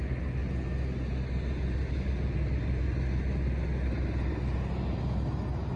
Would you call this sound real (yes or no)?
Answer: yes